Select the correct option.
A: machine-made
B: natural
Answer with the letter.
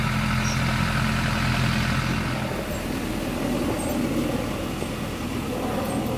B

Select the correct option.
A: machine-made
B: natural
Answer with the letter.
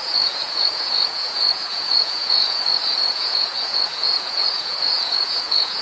A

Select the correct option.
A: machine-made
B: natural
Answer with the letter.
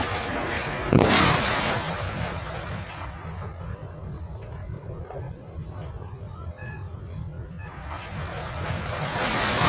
A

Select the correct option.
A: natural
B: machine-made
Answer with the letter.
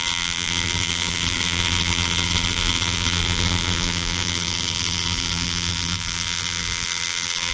B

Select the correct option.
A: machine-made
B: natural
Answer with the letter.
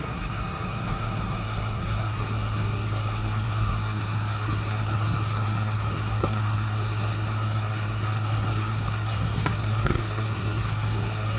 A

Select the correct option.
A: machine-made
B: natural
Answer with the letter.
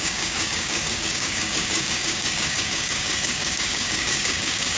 A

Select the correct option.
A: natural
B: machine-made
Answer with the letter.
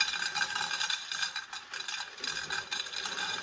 B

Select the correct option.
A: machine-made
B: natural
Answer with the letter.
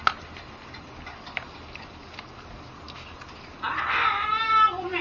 B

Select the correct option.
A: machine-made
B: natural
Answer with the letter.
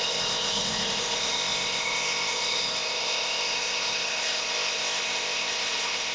A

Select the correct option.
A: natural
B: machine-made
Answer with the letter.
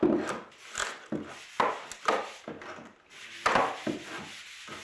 A